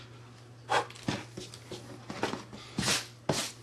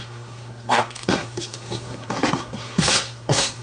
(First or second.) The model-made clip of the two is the second